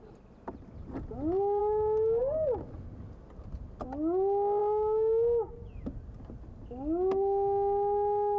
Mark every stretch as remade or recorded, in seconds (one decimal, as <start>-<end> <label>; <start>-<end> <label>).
0.0-8.4 recorded